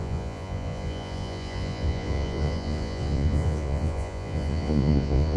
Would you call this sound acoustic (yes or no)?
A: no